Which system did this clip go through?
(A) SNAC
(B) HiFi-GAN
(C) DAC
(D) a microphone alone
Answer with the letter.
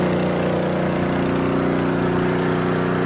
D